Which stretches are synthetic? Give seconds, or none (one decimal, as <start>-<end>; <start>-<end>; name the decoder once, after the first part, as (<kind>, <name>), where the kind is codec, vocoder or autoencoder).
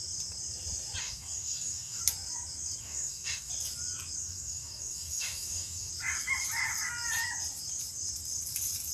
1.0-2.0 (codec, DAC); 2.8-3.5; 4.2-5.9